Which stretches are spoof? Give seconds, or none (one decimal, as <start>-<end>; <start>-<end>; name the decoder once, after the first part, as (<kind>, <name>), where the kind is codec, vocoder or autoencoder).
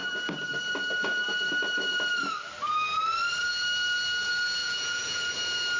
4.6-5.3 (vocoder, Vocos)